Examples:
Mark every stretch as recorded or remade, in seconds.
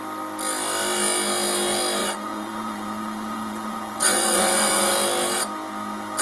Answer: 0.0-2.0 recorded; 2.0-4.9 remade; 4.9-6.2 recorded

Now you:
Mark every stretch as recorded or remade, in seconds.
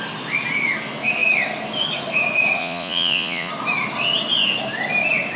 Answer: 0.0-2.6 recorded; 2.6-3.5 remade; 3.5-5.4 recorded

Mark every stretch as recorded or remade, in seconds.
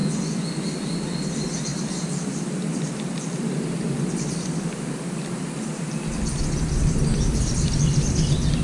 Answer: 0.0-0.6 remade; 0.6-8.6 recorded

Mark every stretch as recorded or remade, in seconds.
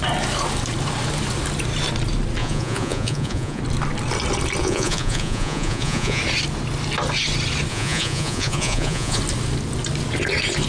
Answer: 0.0-2.4 recorded; 2.4-3.6 remade; 3.6-4.6 recorded; 4.6-6.2 remade; 6.2-7.7 recorded; 7.7-9.2 remade; 9.2-10.7 recorded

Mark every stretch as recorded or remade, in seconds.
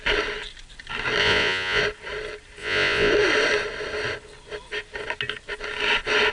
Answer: 0.0-1.2 recorded; 1.2-1.8 remade; 1.8-2.6 recorded; 2.6-3.1 remade; 3.1-6.3 recorded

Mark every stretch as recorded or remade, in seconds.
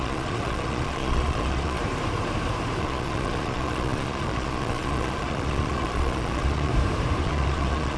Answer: 0.0-1.8 remade; 1.8-2.8 recorded; 2.8-6.7 remade; 6.7-7.2 recorded; 7.2-8.0 remade